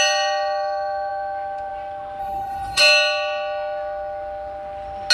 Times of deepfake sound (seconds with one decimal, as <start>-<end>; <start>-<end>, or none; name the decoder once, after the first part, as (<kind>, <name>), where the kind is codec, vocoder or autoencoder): 2.2-2.8 (codec, HILCodec)